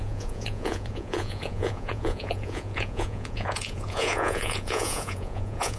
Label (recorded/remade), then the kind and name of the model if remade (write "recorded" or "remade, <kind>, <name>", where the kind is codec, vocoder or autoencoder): remade, vocoder, Vocos